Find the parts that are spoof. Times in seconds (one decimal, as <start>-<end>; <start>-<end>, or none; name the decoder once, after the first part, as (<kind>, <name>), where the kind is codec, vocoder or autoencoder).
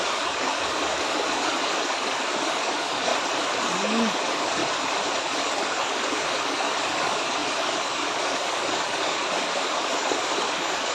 0.0-3.1 (codec, DAC); 3.6-4.6; 5.2-10.9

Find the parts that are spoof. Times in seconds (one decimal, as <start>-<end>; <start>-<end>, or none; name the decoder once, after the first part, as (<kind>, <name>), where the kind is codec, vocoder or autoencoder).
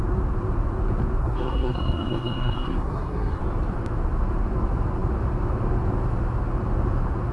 1.2-3.4 (codec, SNAC)